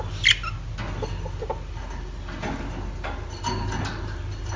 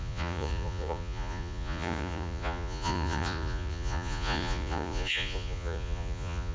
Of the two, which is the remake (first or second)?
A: second